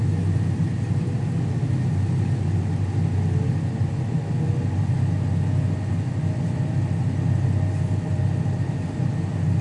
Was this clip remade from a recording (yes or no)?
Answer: no